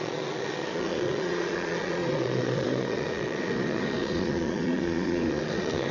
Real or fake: fake